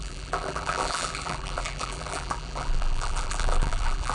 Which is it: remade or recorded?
remade